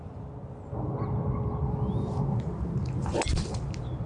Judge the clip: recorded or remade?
recorded